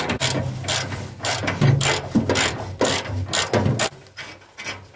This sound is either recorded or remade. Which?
recorded